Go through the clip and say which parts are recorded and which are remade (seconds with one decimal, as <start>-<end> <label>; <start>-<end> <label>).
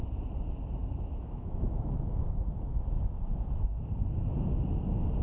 0.0-0.8 recorded; 0.8-3.8 remade; 3.8-5.2 recorded